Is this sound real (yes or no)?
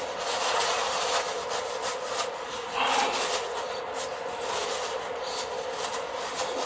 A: yes